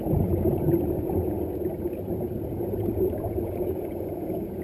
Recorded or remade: remade